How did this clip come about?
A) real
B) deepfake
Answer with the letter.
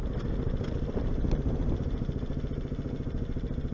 A